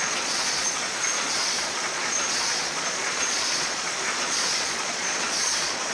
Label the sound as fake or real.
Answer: fake